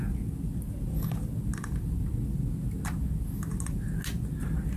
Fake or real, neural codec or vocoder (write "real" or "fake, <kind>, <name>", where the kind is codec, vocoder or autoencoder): real